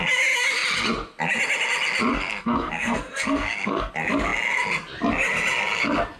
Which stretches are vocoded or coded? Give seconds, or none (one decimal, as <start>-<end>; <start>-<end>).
2.1-3.9